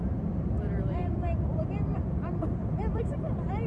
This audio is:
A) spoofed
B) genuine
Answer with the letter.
A